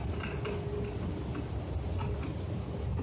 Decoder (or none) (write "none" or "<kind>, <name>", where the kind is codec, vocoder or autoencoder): none